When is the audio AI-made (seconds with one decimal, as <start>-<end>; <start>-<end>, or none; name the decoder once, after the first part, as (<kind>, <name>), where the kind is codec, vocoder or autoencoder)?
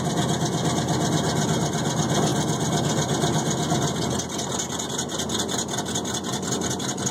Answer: none